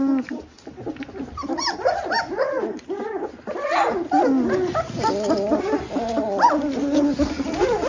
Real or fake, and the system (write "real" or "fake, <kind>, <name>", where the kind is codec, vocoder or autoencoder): real